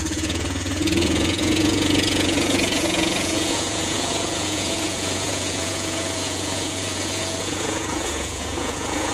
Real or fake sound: fake